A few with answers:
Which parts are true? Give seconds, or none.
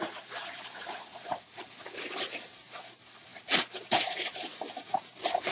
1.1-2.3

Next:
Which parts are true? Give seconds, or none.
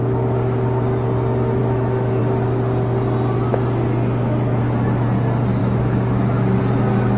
0.0-1.6; 2.2-5.6; 6.6-7.2